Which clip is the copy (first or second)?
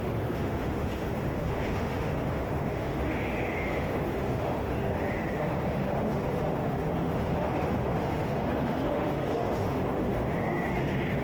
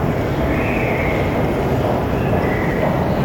first